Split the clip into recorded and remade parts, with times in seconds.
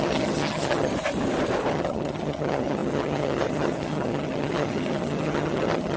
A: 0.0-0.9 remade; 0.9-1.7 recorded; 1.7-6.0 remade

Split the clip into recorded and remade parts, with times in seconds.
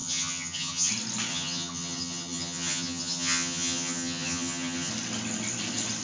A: 0.0-0.9 remade; 0.9-1.3 recorded; 1.3-4.9 remade; 4.9-6.0 recorded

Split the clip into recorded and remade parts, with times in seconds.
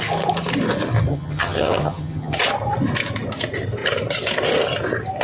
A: 0.0-1.1 recorded; 1.1-2.4 remade; 2.4-5.2 recorded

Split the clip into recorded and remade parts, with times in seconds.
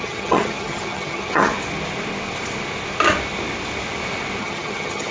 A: 0.0-1.5 remade; 1.5-4.4 recorded; 4.4-5.1 remade